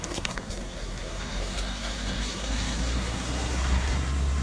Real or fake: fake